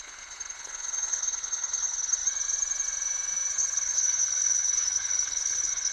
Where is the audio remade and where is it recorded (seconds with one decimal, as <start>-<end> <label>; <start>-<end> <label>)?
0.0-2.2 remade; 2.2-3.5 recorded; 3.5-5.9 remade